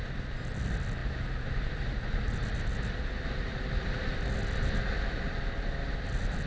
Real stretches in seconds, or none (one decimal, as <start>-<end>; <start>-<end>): 0.0-6.5